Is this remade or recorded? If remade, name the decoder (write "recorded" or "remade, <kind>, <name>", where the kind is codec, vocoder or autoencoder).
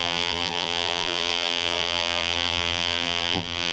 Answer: remade, vocoder, BigVGAN v2